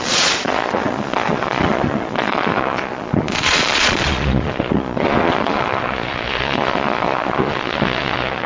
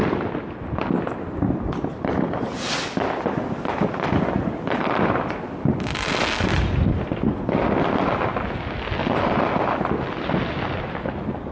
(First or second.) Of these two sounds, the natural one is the second